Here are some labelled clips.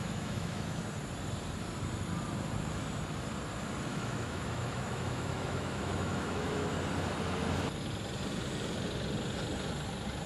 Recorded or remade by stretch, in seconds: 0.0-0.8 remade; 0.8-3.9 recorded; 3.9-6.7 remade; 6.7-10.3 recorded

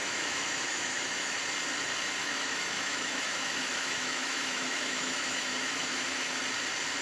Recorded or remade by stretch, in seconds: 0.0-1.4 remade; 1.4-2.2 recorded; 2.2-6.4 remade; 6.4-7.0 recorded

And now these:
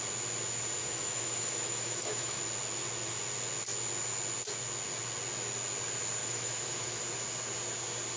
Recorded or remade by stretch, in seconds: 0.0-0.8 recorded; 0.8-2.4 remade; 2.4-6.2 recorded; 6.2-7.0 remade; 7.0-8.2 recorded